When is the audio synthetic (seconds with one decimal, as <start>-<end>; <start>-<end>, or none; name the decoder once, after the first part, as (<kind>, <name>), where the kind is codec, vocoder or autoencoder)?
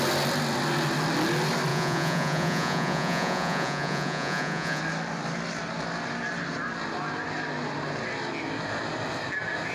1.7-4.8 (vocoder, Vocos)